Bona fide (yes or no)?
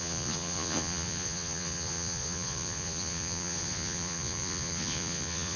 no